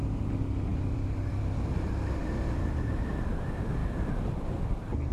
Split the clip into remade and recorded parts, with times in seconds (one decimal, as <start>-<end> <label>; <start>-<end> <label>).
0.0-0.7 recorded; 0.7-1.4 remade; 1.4-2.2 recorded; 2.2-3.1 remade; 3.1-3.8 recorded; 3.8-4.6 remade; 4.6-5.1 recorded